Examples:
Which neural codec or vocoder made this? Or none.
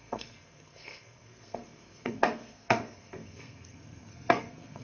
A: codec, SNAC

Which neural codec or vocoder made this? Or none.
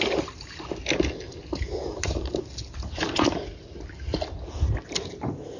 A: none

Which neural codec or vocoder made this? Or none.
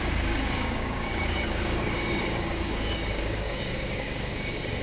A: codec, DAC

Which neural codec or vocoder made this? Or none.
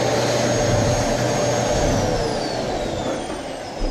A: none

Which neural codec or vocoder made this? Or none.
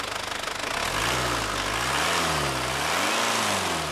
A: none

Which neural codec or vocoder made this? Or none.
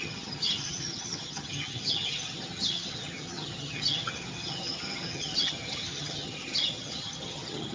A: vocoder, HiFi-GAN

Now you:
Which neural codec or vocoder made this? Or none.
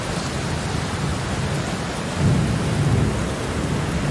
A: none